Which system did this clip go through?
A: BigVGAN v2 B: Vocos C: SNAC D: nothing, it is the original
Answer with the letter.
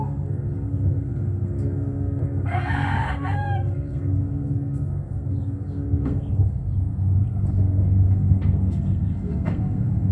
C